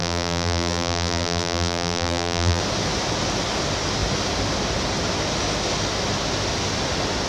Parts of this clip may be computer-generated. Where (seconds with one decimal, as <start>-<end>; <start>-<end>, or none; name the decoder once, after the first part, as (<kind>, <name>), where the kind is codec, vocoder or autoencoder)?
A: 0.0-2.6 (vocoder, BigVGAN v2)